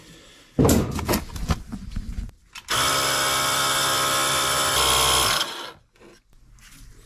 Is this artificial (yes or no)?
no